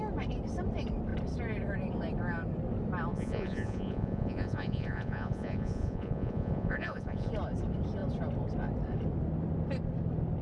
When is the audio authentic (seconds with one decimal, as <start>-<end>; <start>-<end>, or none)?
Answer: 0.0-3.1; 7.3-10.4